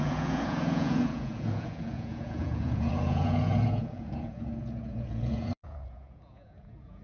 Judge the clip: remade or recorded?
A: remade